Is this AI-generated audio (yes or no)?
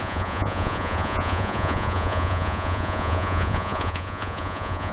yes